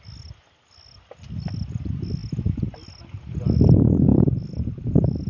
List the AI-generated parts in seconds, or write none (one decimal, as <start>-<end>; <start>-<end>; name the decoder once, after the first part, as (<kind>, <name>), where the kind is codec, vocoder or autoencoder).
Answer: none